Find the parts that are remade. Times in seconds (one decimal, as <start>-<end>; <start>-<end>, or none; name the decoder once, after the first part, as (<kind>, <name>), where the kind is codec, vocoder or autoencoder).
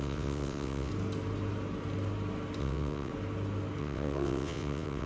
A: 0.0-0.9 (vocoder, WaveNeXt); 2.6-3.1; 3.8-5.1